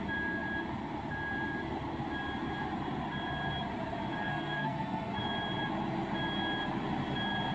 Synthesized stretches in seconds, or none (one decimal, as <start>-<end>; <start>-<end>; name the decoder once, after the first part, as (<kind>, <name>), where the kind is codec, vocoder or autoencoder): 4.2-5.2 (codec, SNAC)